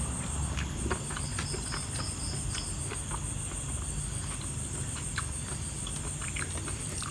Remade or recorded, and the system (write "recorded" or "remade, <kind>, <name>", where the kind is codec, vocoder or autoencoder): recorded